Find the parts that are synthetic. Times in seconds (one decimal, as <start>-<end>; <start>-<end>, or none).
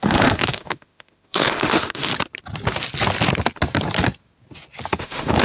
0.0-2.1; 4.9-5.4